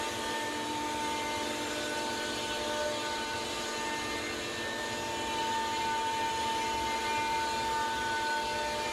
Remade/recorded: recorded